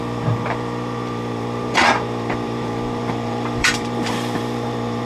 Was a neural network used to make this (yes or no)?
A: yes